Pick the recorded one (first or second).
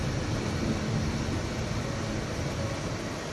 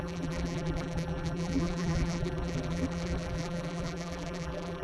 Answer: first